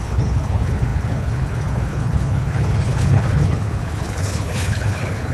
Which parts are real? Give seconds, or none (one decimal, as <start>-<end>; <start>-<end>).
none